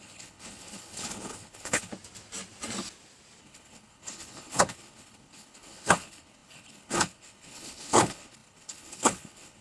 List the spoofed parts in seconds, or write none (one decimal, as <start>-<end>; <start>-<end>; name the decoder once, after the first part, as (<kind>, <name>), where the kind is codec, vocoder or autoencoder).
0.0-1.9 (codec, HILCodec); 3.4-9.6